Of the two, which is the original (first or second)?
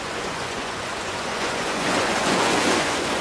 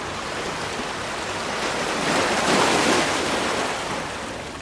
second